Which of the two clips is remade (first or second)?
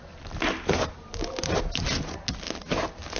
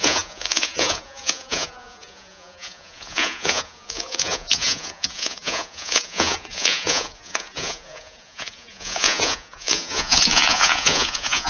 second